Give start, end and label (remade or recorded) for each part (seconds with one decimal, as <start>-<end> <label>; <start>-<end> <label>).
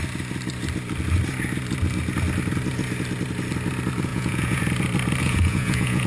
0.0-4.1 recorded; 4.1-4.6 remade; 4.6-5.2 recorded; 5.2-6.1 remade